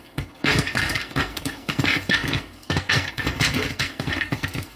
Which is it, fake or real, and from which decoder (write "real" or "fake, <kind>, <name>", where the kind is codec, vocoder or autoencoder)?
fake, codec, SNAC